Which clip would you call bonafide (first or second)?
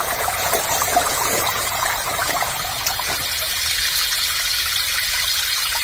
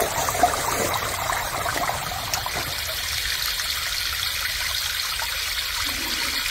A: second